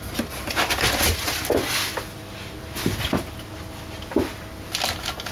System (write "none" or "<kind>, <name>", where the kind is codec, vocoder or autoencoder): none